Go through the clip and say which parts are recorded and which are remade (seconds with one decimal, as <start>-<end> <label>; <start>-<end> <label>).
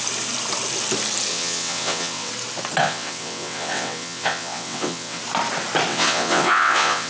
0.0-1.3 recorded; 1.3-2.3 remade; 2.3-2.8 recorded; 2.8-5.2 remade; 5.2-5.9 recorded; 5.9-7.1 remade